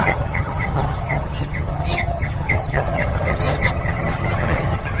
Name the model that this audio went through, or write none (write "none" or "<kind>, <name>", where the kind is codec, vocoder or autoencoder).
vocoder, HiFi-GAN